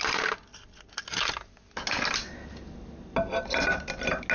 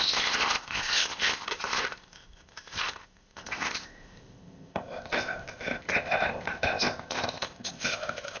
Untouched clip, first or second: first